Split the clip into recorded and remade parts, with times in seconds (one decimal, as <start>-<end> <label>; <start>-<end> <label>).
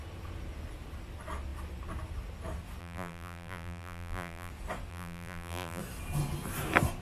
0.0-2.8 recorded; 2.8-4.5 remade; 4.5-4.9 recorded; 4.9-5.8 remade; 5.8-7.0 recorded